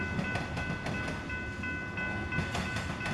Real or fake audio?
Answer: real